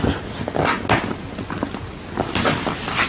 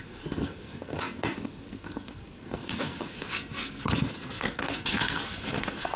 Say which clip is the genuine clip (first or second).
first